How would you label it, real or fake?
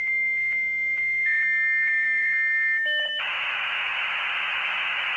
fake